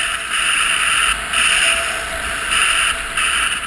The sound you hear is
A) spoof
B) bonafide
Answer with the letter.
B